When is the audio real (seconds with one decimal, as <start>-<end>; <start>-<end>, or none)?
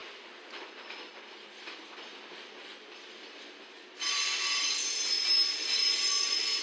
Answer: 0.0-6.6